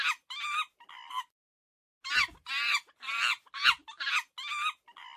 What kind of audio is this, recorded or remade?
recorded